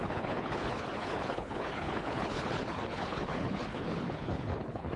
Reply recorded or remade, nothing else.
remade